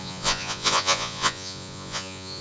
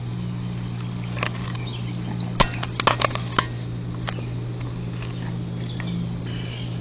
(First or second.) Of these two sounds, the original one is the second